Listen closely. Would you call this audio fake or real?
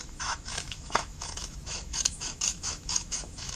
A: fake